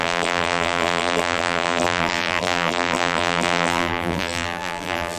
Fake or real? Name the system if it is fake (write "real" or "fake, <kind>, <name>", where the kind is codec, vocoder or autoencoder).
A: fake, vocoder, BigVGAN v2